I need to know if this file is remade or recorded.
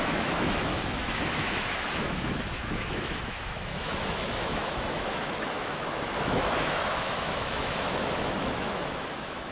remade